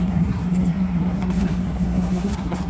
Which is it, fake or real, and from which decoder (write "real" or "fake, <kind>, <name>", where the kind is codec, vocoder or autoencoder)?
fake, codec, SNAC